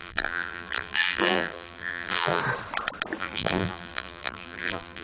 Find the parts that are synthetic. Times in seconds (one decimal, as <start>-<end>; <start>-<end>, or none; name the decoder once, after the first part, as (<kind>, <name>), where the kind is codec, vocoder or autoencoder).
0.0-2.4 (vocoder, BigVGAN v2); 3.2-5.0